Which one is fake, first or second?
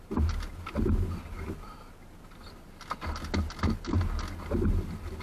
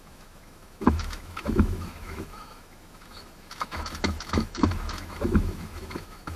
second